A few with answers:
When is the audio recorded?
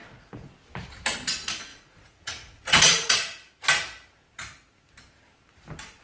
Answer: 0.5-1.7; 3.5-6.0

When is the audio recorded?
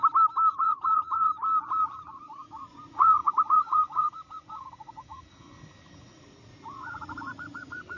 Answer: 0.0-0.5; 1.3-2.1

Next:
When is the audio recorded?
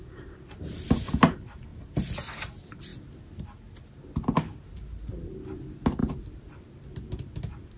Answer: 0.0-7.8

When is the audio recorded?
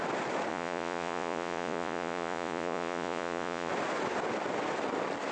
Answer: 0.0-0.5; 3.7-5.3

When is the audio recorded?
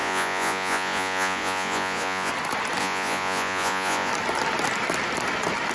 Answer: 2.3-2.8; 4.1-5.7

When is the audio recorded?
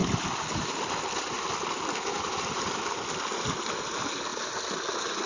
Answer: 0.0-5.3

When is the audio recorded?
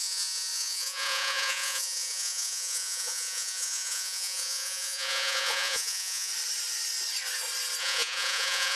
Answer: 6.3-7.8